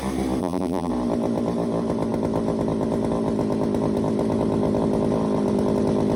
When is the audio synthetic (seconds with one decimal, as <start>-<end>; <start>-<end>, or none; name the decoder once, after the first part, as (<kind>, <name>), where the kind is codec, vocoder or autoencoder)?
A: 0.4-0.9 (vocoder, BigVGAN v2)